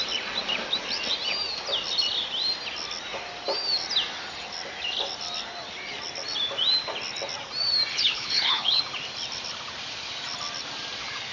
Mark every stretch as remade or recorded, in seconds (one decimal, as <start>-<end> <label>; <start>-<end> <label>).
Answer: 0.0-7.9 recorded; 7.9-8.8 remade; 8.8-11.3 recorded